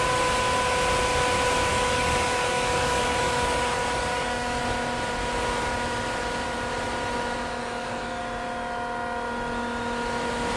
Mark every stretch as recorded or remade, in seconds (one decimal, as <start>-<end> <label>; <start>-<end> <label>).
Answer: 0.0-1.7 recorded; 1.7-4.6 remade; 4.6-7.6 recorded; 7.6-8.2 remade; 8.2-10.6 recorded